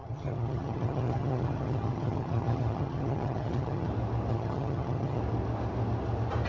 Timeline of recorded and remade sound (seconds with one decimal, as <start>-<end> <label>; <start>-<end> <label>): 0.0-3.9 remade; 3.9-4.3 recorded; 4.3-5.2 remade; 5.2-6.5 recorded

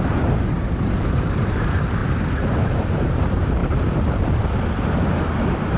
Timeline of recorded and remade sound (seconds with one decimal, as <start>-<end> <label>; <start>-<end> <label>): 0.0-2.0 remade; 2.0-2.7 recorded; 2.7-3.6 remade; 3.6-5.8 recorded

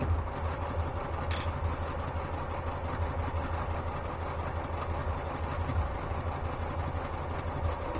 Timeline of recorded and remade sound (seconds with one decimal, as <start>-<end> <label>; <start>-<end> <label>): 0.0-5.0 recorded; 5.0-6.1 remade; 6.1-8.0 recorded

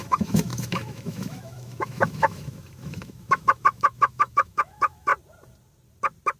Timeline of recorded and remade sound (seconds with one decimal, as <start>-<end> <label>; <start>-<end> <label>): 0.0-5.1 remade; 5.1-6.4 recorded

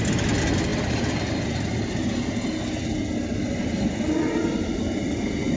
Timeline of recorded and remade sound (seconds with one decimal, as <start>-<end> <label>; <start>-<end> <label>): 0.0-5.6 recorded

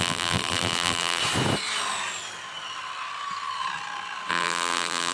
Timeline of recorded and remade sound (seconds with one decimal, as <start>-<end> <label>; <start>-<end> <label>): 0.0-1.2 remade; 1.2-4.3 recorded; 4.3-5.1 remade

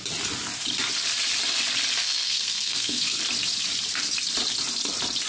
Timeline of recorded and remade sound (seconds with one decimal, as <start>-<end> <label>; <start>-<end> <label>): 0.0-2.0 recorded; 2.0-3.2 remade; 3.2-5.3 recorded